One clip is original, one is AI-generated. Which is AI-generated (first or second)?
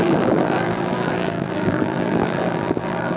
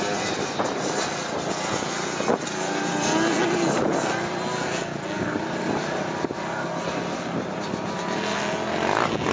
first